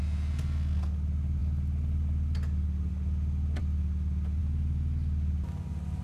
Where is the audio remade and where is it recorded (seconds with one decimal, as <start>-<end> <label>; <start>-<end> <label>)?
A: 0.0-6.0 recorded